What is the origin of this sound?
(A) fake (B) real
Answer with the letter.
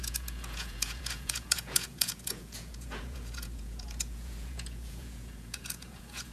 A